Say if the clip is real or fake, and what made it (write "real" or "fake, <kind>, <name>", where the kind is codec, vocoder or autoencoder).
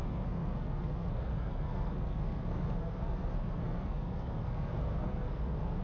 fake, codec, SNAC